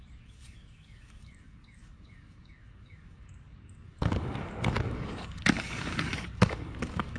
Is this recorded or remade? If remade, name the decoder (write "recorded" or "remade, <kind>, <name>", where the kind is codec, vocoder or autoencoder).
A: remade, codec, DAC